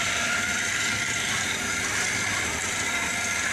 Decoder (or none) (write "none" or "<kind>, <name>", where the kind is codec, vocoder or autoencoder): none